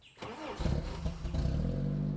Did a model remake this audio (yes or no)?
no